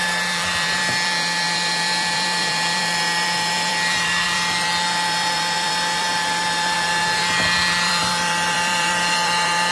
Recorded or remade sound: remade